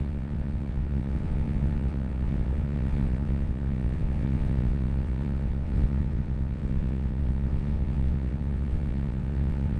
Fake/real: fake